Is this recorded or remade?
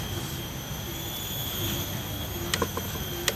recorded